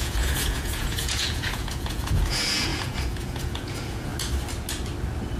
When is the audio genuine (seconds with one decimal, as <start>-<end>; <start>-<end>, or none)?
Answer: 4.1-5.4